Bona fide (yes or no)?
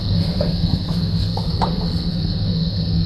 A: no